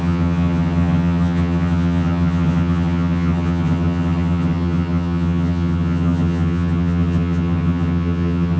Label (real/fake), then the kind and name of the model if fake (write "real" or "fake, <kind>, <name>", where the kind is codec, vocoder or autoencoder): fake, vocoder, HiFi-GAN